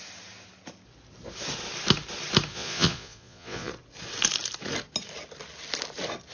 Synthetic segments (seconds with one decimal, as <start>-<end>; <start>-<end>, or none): 2.5-3.7